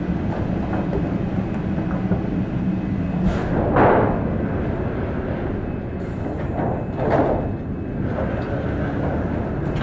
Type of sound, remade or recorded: recorded